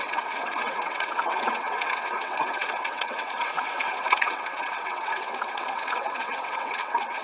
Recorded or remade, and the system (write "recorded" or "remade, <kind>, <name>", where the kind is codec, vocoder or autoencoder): remade, vocoder, WaveNeXt